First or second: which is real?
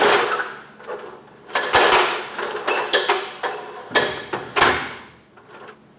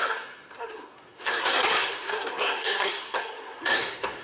first